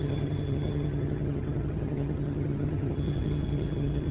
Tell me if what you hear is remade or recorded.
remade